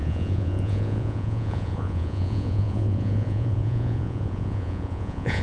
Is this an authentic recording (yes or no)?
no